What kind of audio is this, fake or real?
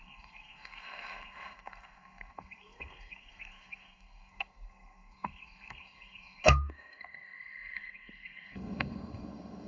fake